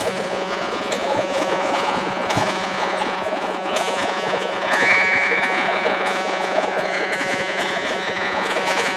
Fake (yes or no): yes